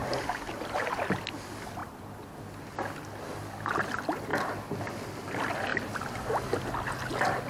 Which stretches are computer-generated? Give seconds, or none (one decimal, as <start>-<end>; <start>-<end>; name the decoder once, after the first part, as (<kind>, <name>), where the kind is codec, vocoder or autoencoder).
0.0-0.8 (vocoder, BigVGAN v2); 1.8-2.4; 5.7-6.3